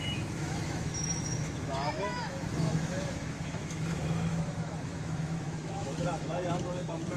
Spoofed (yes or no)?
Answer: yes